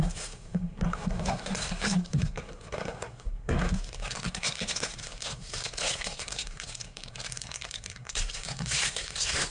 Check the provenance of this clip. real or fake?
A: fake